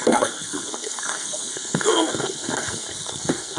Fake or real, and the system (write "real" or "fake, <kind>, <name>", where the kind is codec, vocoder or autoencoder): fake, codec, SNAC